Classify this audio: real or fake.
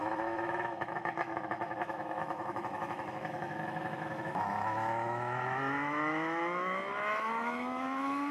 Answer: fake